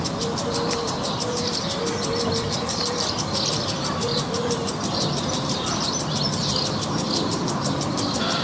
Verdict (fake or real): fake